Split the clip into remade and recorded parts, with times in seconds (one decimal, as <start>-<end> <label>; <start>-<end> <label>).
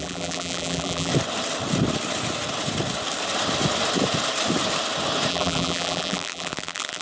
0.0-1.1 remade; 1.1-5.3 recorded; 5.3-7.0 remade